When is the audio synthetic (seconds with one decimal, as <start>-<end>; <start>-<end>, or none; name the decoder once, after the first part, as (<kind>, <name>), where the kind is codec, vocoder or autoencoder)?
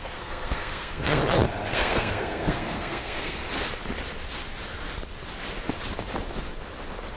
0.0-1.2 (codec, SNAC); 1.7-3.4